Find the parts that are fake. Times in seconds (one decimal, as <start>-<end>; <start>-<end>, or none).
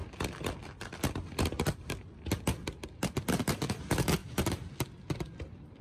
none